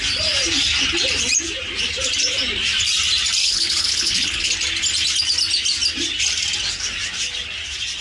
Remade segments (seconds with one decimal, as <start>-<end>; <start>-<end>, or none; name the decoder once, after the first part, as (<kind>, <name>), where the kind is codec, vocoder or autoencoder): 3.4-4.5 (codec, HILCodec)